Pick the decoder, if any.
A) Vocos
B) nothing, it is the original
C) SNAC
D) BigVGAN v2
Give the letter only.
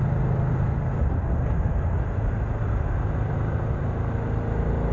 B